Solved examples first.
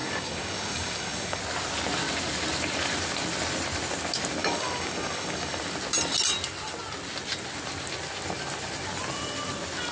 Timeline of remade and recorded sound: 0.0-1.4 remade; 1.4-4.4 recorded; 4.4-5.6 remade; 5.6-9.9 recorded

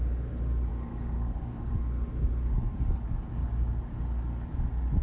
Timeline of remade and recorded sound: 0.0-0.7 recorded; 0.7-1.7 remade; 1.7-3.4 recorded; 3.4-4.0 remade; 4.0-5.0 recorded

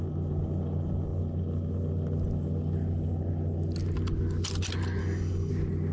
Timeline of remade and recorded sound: 0.0-5.0 recorded; 5.0-5.5 remade; 5.5-5.9 recorded